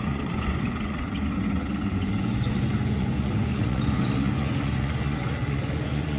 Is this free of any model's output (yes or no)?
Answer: no